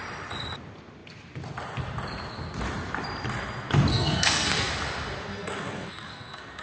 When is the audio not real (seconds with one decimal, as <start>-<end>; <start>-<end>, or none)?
3.9-4.7; 5.3-6.6